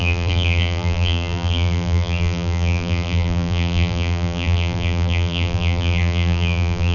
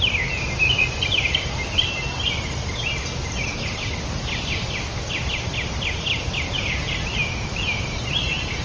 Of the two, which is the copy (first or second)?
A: first